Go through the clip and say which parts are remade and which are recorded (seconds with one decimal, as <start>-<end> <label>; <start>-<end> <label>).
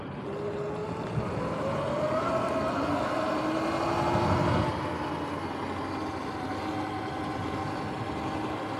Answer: 0.0-8.8 recorded